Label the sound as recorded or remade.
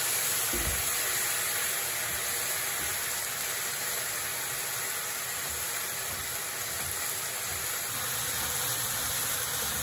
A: recorded